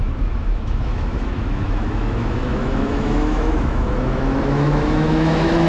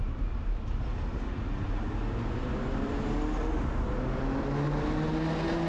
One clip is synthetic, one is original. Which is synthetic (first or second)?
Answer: first